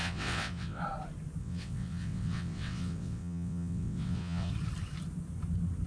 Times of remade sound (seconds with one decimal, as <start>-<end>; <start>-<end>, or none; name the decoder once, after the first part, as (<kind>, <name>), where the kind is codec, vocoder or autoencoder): 0.0-0.8 (vocoder, WaveNeXt); 1.4-4.5